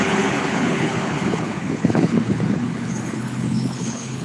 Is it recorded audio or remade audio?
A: remade